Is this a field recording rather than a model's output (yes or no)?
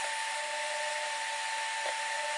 yes